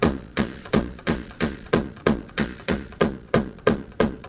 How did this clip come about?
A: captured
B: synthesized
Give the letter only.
B